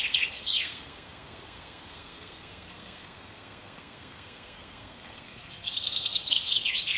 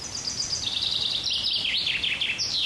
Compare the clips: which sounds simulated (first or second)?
first